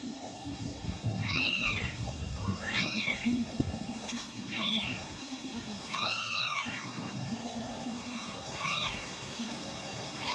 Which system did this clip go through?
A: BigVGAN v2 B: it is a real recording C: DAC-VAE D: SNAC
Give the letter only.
D